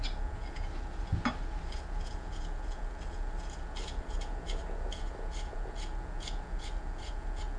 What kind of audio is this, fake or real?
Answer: real